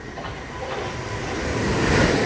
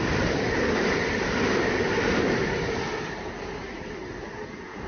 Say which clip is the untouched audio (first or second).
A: first